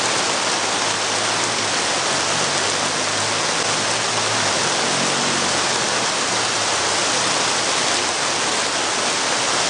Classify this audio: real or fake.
real